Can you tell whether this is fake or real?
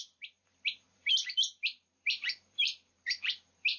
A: fake